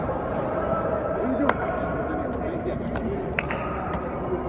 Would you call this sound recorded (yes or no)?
no